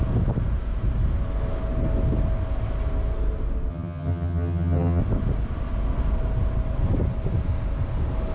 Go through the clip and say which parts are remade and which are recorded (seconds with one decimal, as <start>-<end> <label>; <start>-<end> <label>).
0.0-3.7 recorded; 3.7-5.0 remade; 5.0-8.3 recorded